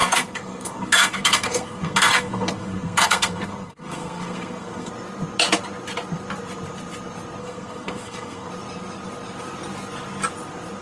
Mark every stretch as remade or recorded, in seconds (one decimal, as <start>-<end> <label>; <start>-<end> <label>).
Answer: 0.0-4.9 remade; 4.9-7.4 recorded; 7.4-8.5 remade; 8.5-10.8 recorded